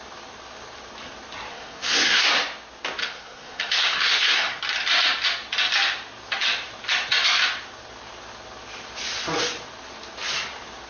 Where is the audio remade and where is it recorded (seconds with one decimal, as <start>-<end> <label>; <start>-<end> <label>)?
0.0-1.5 recorded; 1.5-2.3 remade; 2.3-3.0 recorded; 3.0-4.6 remade; 4.6-10.9 recorded